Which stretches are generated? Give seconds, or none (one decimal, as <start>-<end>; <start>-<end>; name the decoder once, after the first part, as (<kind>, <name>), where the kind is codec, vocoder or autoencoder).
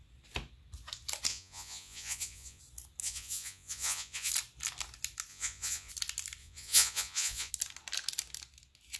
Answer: 1.3-2.6 (vocoder, Vocos); 3.0-4.3; 5.3-5.9; 6.4-7.5